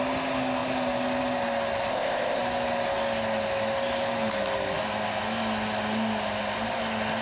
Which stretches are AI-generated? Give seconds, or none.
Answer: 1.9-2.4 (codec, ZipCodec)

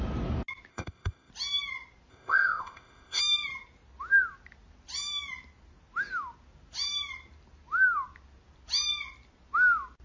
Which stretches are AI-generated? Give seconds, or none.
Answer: 0.7-1.3 (codec, ZipCodec); 2.1-3.2

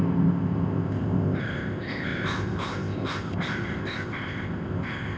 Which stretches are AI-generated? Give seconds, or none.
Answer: 0.0-5.2 (codec, ZipCodec)

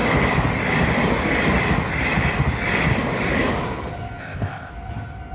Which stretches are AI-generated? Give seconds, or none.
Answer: 4.2-4.7 (codec, ZipCodec)

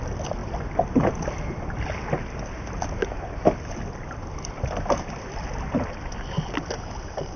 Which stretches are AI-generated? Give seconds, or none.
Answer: none

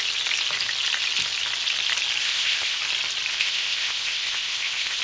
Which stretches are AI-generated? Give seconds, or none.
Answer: 2.2-2.8 (codec, ZipCodec); 3.3-5.0

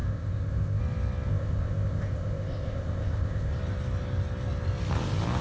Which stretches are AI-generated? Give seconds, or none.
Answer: 0.0-0.8 (codec, ZipCodec); 1.3-3.5

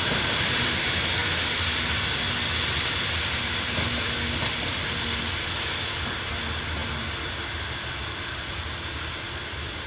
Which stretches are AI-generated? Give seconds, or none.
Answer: none